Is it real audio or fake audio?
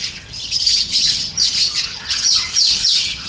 fake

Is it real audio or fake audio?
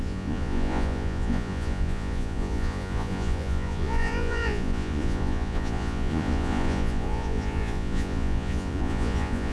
fake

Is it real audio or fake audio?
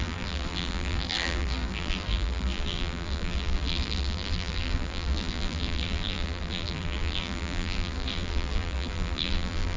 fake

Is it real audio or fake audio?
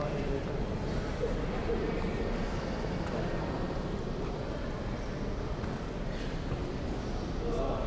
real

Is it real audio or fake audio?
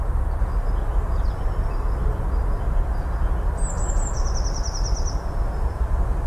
real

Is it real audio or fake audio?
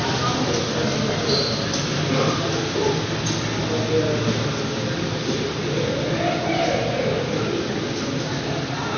real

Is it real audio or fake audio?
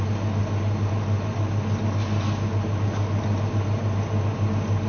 real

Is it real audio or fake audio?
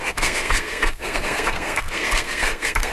fake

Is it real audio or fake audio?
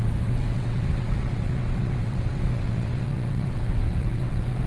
fake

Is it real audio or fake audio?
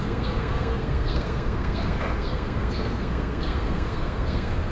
fake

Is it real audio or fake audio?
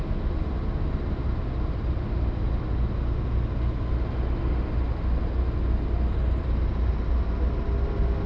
real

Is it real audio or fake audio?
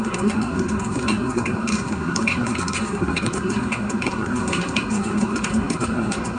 fake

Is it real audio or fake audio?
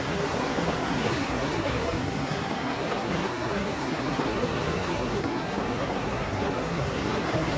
fake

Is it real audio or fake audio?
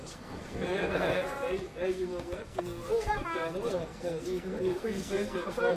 fake